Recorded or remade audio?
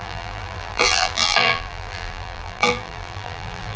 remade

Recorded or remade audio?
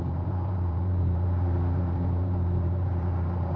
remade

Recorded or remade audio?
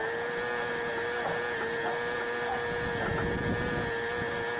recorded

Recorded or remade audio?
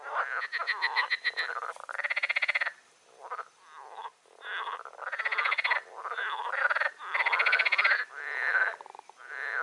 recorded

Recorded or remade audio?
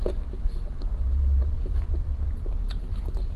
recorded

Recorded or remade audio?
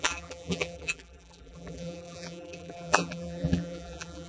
remade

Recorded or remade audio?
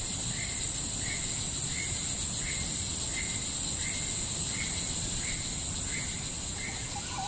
recorded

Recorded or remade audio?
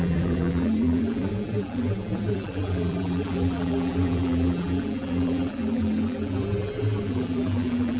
remade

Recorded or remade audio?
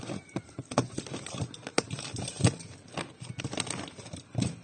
recorded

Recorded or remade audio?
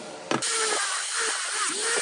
recorded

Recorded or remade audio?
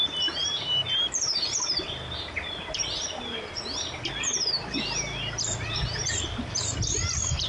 remade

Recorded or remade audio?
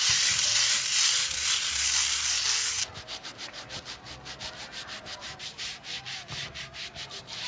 remade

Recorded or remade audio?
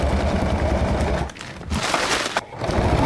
remade